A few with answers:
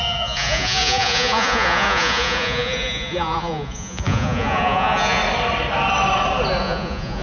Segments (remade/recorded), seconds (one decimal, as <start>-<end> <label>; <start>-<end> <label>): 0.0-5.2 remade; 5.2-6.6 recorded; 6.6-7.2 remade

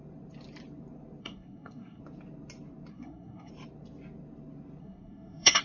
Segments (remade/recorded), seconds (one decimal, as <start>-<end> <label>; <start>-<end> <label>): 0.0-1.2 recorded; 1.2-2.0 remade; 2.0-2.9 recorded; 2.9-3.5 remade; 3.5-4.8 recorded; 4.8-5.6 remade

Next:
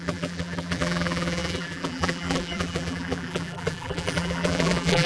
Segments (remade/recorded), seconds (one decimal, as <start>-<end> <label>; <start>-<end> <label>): 0.0-5.1 remade

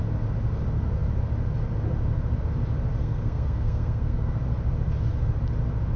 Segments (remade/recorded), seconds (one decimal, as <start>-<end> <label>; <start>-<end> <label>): 0.0-3.0 recorded; 3.0-4.4 remade; 4.4-6.0 recorded

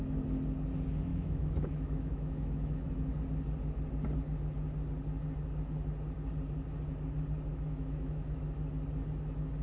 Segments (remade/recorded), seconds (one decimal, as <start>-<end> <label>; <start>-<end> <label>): 0.0-1.1 recorded; 1.1-2.9 remade; 2.9-7.5 recorded; 7.5-8.4 remade; 8.4-9.6 recorded

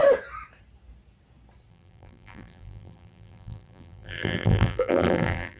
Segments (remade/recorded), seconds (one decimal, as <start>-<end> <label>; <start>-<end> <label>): 0.0-1.7 recorded; 1.7-5.6 remade

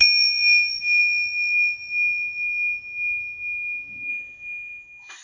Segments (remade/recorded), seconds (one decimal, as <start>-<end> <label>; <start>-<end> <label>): 0.0-1.0 remade; 1.0-4.1 recorded; 4.1-5.2 remade